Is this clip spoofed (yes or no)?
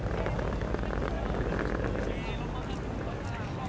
no